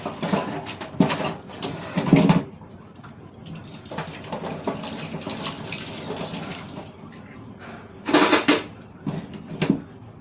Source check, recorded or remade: recorded